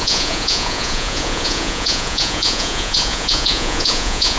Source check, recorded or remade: remade